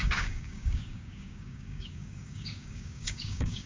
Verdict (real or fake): fake